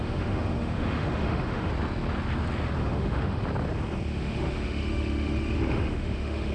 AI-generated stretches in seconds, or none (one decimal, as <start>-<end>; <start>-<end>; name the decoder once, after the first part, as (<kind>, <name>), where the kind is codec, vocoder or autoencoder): 0.0-1.7 (autoencoder, DAC-VAE); 2.8-3.4; 4.1-6.5